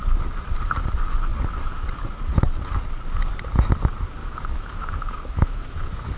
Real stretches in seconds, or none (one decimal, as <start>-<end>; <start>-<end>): 0.0-4.2